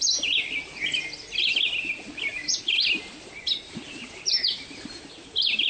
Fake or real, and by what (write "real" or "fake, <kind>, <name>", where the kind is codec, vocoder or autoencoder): real